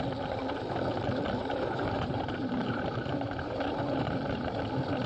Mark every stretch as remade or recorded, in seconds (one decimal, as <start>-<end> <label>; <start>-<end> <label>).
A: 0.0-1.4 recorded; 1.4-4.5 remade; 4.5-5.1 recorded